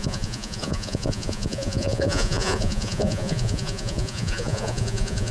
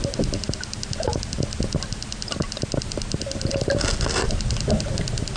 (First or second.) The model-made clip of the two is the first